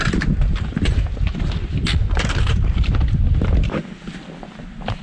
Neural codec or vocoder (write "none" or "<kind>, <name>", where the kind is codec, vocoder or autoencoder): none